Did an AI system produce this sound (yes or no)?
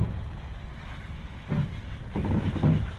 no